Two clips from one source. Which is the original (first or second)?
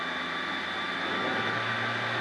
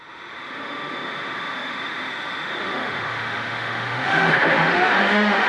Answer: first